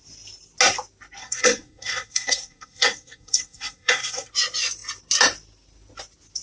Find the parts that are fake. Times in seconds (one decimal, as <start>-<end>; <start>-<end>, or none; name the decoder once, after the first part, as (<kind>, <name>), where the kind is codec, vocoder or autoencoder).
1.2-4.3 (codec, SNAC)